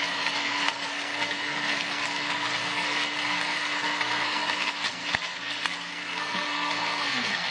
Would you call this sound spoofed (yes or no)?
yes